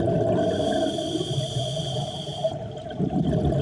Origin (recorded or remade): recorded